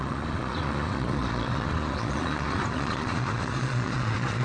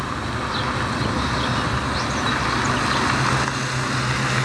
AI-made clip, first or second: first